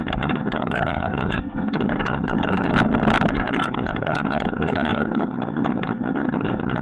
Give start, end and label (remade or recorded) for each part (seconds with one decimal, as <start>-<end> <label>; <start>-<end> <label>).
0.0-2.7 remade; 2.7-3.3 recorded; 3.3-6.8 remade